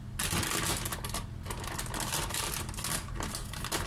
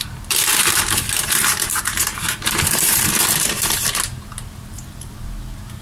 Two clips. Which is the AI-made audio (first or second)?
second